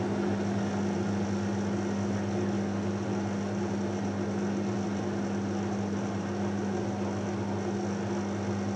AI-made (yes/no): no